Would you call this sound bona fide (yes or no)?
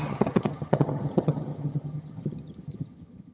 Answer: no